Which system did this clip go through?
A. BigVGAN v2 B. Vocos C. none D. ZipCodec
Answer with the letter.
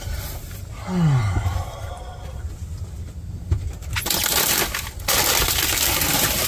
C